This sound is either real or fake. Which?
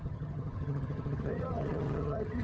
fake